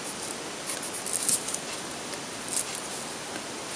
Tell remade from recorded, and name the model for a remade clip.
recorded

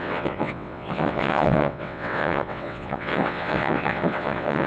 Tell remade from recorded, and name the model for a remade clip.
remade, vocoder, WaveNeXt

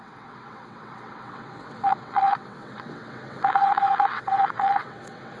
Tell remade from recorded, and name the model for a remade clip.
remade, vocoder, WaveNeXt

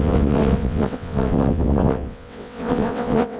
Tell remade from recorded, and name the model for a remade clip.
remade, vocoder, WaveNeXt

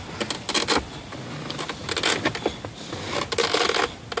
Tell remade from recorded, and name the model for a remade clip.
recorded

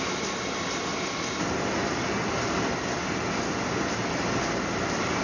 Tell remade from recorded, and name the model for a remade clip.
recorded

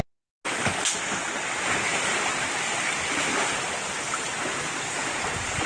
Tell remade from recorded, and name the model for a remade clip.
recorded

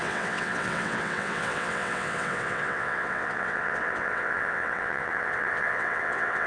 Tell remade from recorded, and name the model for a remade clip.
remade, vocoder, WaveNeXt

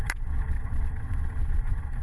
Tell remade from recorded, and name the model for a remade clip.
remade, vocoder, WaveNeXt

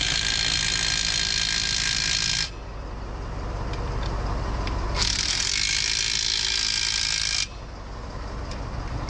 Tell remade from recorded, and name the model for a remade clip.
recorded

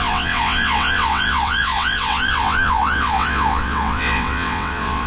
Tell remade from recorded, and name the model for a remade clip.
remade, vocoder, WaveNeXt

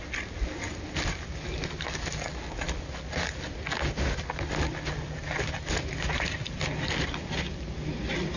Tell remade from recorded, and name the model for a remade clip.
recorded